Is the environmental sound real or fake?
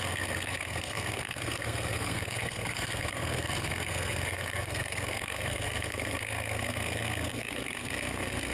fake